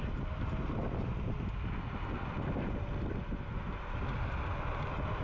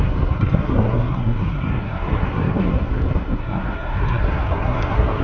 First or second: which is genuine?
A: first